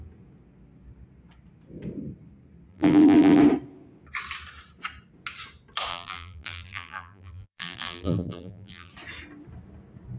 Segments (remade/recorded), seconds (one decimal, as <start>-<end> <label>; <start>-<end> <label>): 0.0-2.7 recorded; 2.7-3.4 remade; 3.4-5.9 recorded; 5.9-8.9 remade; 8.9-10.2 recorded